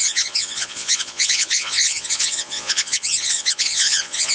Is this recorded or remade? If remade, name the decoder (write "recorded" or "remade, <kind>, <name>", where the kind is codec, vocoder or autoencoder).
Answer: remade, vocoder, Vocos